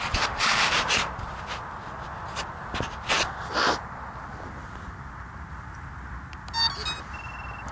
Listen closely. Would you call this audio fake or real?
real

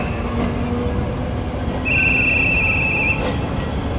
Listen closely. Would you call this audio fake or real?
real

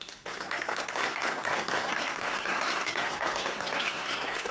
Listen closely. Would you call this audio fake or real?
fake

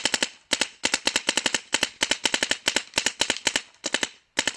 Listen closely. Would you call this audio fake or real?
real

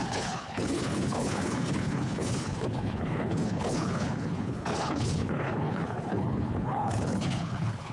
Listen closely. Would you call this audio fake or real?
fake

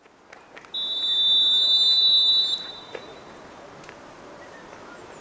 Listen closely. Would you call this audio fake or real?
real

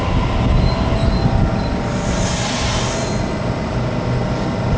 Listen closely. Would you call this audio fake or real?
real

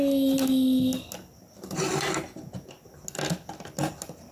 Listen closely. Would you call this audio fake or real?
real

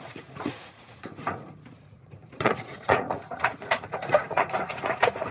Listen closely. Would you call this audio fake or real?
fake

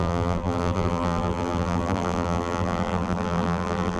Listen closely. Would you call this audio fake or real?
fake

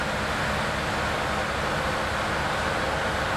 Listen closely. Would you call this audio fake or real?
real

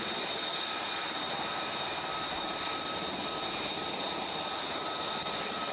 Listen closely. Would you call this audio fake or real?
real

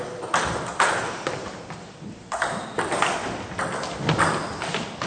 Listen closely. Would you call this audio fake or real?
real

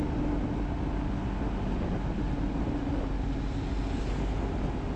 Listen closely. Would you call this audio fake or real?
real